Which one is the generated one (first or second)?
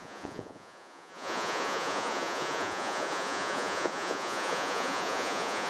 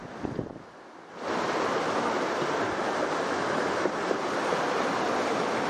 first